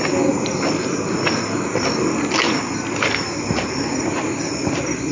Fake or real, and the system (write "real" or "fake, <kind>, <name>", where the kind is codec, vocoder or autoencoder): real